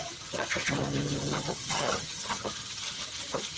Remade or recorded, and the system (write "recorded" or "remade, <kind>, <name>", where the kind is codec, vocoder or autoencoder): remade, vocoder, HiFi-GAN